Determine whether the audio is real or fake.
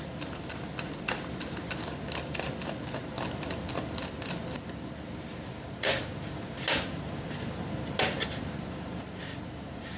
real